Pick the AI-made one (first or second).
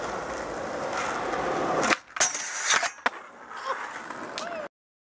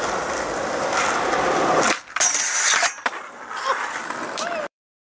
second